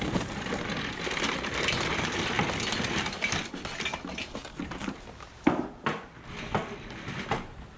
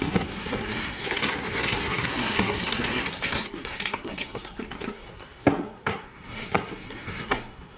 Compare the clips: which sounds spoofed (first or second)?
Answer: second